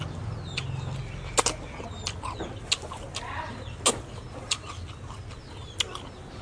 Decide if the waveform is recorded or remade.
recorded